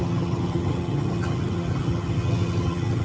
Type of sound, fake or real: fake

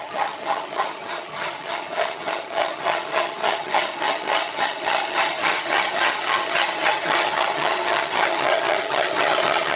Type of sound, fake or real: fake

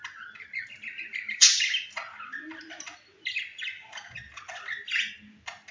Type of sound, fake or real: real